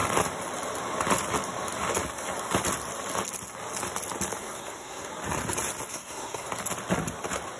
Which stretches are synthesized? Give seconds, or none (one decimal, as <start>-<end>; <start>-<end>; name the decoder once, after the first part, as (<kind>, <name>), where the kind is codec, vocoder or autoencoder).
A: 4.4-5.1 (codec, SNAC); 5.9-6.5